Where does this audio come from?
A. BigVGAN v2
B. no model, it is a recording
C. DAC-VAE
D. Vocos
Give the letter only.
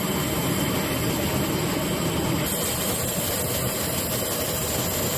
B